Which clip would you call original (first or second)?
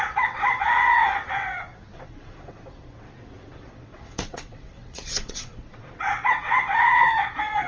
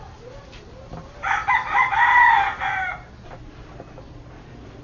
second